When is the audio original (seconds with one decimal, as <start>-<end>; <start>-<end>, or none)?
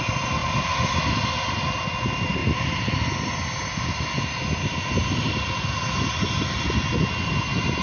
0.0-2.4; 3.0-5.0; 5.7-7.8